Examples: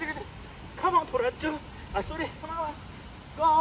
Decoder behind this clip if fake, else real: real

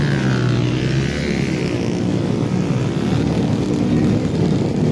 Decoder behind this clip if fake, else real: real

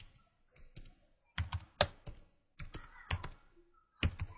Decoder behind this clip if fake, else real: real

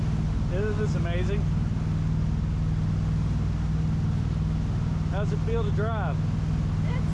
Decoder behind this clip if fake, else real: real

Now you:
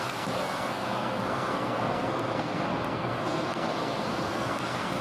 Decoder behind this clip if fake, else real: fake, codec, SNAC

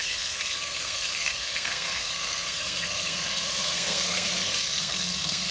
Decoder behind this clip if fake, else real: fake, codec, SNAC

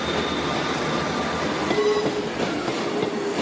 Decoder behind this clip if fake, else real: real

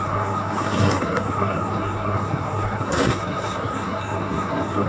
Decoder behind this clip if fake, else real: fake, codec, SNAC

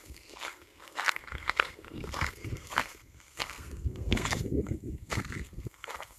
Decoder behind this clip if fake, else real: fake, codec, SNAC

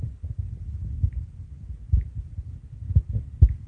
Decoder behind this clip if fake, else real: real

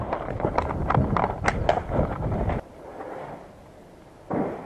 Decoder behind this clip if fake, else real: real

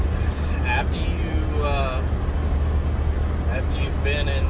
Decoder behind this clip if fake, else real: real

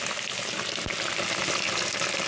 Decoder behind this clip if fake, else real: real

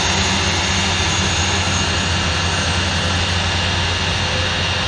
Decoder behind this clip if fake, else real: real